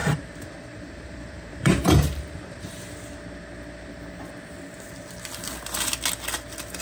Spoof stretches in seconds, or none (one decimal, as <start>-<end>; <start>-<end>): 0.0-2.7